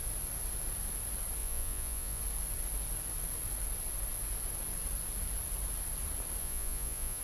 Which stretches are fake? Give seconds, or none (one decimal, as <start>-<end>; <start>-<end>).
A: 1.4-2.2; 6.4-7.2